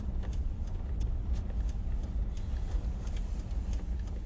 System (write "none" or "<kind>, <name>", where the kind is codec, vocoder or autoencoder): none